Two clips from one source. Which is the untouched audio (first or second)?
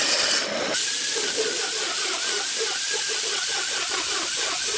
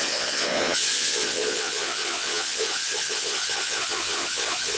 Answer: first